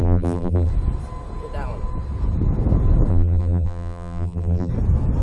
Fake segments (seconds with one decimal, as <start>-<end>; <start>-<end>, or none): 0.0-0.7; 3.1-4.7